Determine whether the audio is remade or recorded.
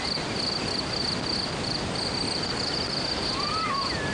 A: recorded